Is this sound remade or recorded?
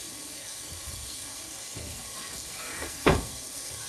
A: remade